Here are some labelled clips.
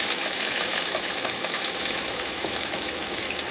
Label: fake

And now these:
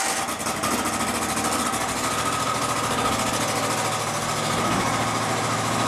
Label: real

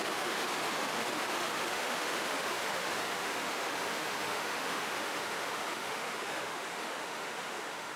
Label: fake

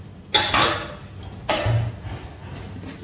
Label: real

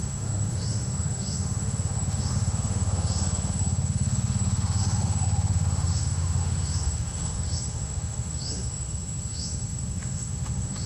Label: fake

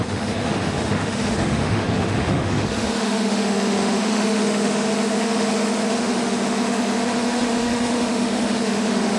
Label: fake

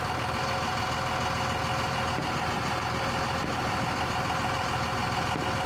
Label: real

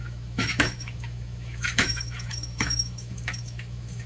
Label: fake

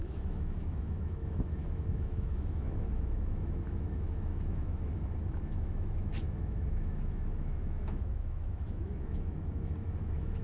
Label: fake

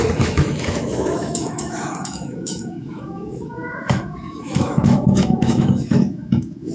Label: fake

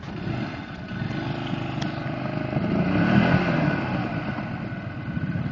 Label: real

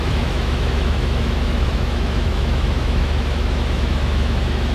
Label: fake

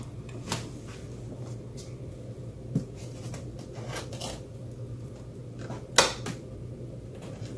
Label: real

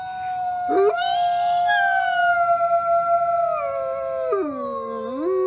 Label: real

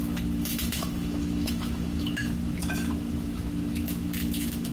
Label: fake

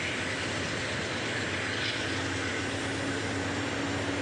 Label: real